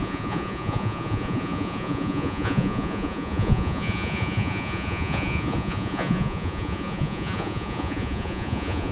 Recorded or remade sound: remade